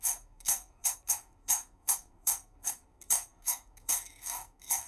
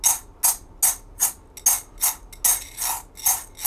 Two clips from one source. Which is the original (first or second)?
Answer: second